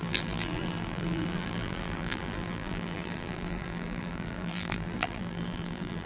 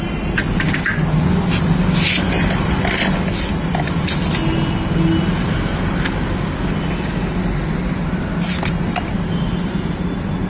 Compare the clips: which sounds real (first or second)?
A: second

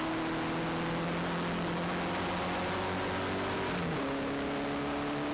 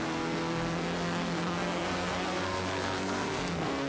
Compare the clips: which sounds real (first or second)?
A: first